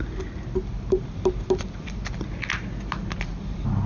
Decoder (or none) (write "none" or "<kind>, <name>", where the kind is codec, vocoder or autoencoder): none